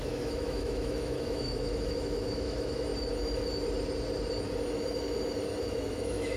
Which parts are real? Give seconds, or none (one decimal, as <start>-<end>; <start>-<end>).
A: 2.9-5.6

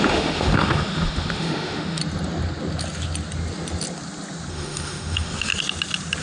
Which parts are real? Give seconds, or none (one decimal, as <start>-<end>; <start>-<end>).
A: 2.0-4.5; 5.5-6.2